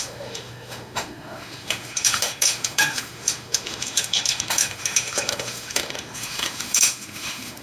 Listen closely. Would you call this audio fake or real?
fake